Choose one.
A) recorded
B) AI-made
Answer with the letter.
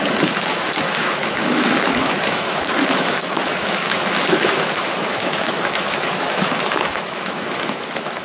B